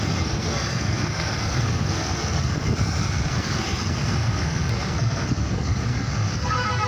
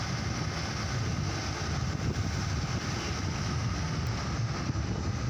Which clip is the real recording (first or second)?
second